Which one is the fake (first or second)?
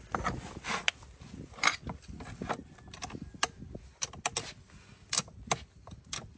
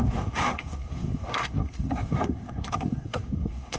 second